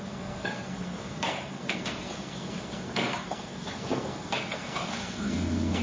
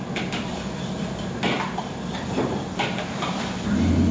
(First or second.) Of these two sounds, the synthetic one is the first